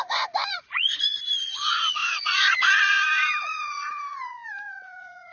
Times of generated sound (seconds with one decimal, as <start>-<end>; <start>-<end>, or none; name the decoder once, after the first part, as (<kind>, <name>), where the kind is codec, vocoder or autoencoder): 0.0-5.3 (vocoder, Vocos)